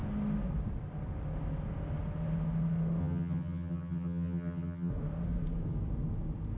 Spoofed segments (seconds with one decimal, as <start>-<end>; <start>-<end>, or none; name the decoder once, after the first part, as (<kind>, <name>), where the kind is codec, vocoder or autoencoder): 3.0-4.9 (vocoder, HiFi-GAN)